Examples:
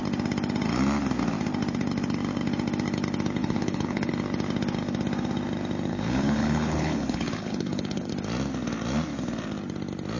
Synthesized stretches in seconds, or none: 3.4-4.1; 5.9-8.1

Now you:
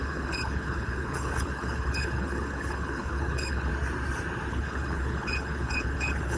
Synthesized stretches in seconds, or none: 0.0-3.7; 4.5-6.4